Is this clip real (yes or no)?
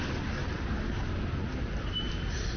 yes